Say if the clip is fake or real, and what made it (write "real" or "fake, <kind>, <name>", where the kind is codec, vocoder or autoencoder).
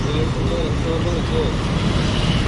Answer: real